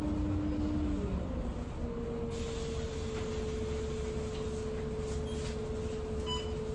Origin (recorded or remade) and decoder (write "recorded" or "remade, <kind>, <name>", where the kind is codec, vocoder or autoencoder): recorded